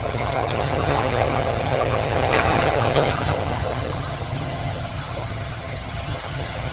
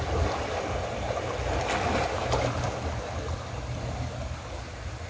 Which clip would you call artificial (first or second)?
first